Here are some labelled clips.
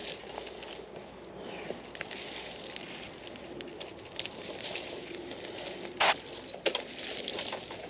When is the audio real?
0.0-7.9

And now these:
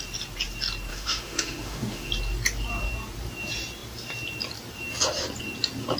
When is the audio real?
0.0-0.9; 2.1-6.0